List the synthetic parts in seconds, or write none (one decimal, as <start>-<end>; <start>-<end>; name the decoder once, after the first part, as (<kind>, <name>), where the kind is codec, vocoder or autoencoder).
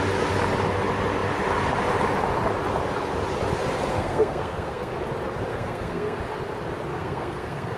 3.9-4.9 (codec, SNAC); 5.5-6.2; 6.9-7.8